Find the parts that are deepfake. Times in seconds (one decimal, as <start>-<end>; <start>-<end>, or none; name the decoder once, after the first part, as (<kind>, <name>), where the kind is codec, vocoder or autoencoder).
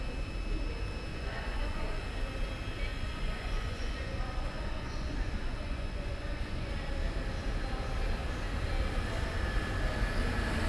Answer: 1.1-2.0 (vocoder, Vocos); 2.9-6.7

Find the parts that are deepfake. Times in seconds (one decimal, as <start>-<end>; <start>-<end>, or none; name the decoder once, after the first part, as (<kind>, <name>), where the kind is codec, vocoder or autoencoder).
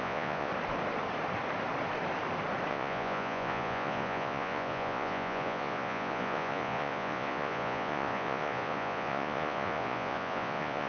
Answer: 0.0-0.5 (vocoder, Vocos); 2.7-10.9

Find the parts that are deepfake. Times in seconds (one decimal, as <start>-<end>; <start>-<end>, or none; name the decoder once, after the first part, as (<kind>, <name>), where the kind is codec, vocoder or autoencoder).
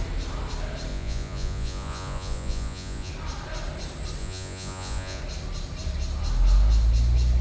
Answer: 0.9-3.1 (vocoder, Vocos); 4.2-5.2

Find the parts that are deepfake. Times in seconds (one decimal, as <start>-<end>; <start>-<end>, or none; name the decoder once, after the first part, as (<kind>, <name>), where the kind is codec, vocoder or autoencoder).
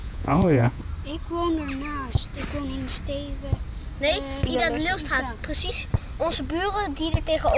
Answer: 0.0-0.8 (vocoder, Vocos)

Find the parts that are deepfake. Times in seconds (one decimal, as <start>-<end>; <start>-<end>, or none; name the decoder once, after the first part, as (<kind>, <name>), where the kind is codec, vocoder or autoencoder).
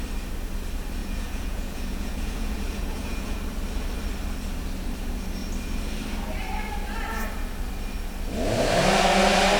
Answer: 1.0-3.4 (vocoder, Vocos)